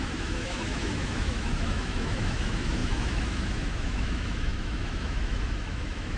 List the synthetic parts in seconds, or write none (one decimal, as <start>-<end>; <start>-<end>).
0.0-6.2